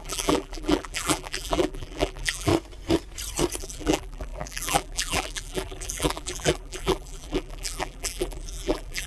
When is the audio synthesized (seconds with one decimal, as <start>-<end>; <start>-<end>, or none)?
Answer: 0.0-2.5; 3.6-9.1